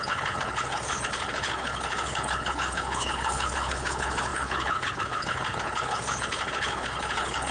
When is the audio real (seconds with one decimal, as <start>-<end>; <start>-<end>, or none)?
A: none